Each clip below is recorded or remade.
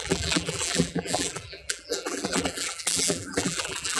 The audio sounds remade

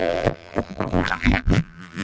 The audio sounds remade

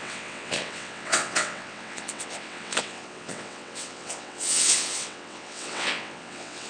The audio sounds remade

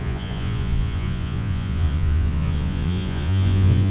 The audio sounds remade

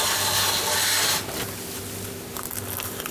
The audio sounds recorded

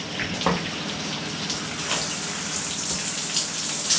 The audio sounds recorded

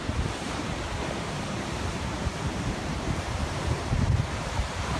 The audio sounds remade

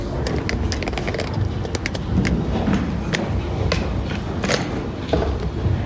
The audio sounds recorded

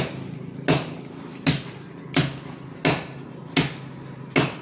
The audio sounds recorded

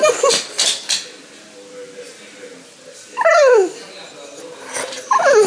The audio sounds recorded